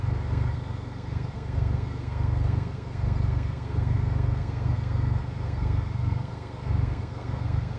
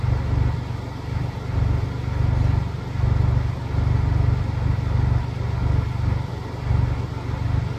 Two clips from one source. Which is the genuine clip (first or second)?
second